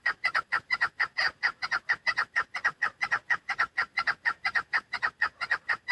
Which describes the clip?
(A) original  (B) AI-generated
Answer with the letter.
B